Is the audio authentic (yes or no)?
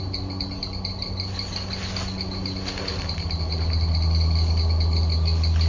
yes